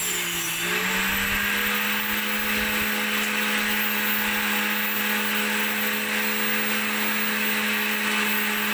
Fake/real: real